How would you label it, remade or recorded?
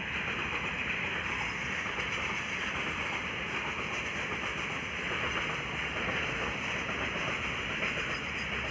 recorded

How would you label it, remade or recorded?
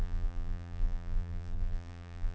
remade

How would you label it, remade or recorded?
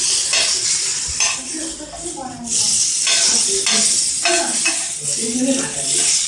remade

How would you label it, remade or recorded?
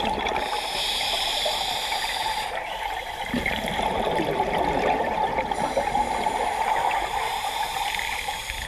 remade